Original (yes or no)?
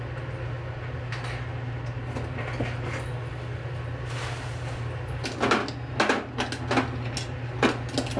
yes